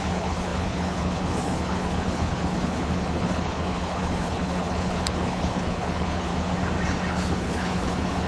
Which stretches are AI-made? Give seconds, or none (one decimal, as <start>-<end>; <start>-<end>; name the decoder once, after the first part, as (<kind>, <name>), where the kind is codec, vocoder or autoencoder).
0.0-6.3 (codec, HILCodec); 7.1-8.3